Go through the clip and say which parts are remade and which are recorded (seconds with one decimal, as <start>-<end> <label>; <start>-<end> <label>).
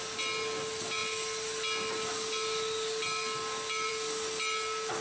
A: 0.0-5.0 recorded